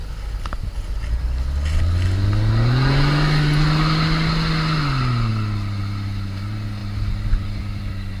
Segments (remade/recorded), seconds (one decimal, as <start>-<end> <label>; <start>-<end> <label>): 0.0-8.2 recorded